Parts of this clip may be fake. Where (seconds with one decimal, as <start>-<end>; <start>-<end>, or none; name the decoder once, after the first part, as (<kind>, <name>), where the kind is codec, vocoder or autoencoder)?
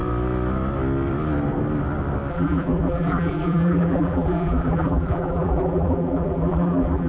2.3-7.1 (vocoder, BigVGAN v2)